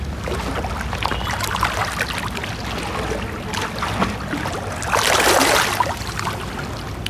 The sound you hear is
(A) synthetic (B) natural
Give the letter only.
B